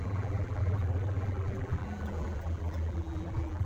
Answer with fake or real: fake